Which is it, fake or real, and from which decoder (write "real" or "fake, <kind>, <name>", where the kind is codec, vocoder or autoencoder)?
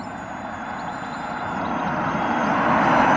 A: real